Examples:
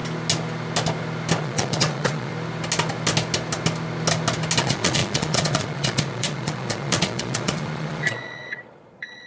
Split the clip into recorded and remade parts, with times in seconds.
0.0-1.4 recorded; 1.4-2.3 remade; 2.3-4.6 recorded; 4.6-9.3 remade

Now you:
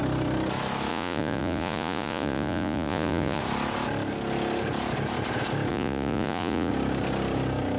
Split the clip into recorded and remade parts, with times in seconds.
0.0-0.9 recorded; 0.9-3.4 remade; 3.4-5.7 recorded; 5.7-6.7 remade; 6.7-7.8 recorded

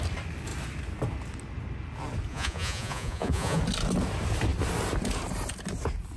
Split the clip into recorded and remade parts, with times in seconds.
0.0-2.3 recorded; 2.3-3.6 remade; 3.6-6.2 recorded

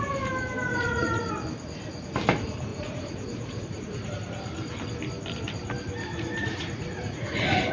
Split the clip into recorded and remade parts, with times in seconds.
0.0-0.7 recorded; 0.7-1.3 remade; 1.3-2.7 recorded; 2.7-4.1 remade; 4.1-6.1 recorded; 6.1-7.7 remade

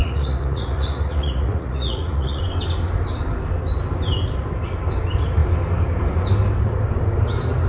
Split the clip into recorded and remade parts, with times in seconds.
0.0-2.4 remade; 2.4-7.7 recorded

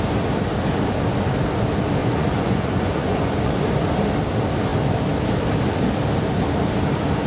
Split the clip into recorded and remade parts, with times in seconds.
0.0-2.0 recorded; 2.0-3.6 remade; 3.6-7.3 recorded